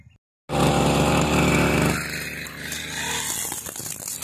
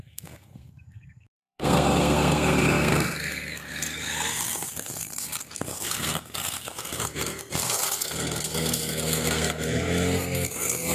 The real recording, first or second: first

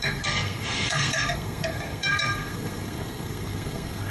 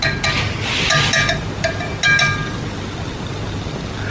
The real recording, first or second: second